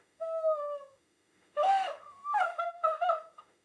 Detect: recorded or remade remade